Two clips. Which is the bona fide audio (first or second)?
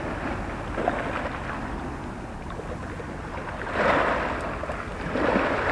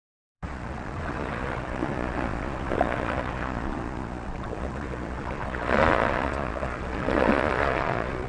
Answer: first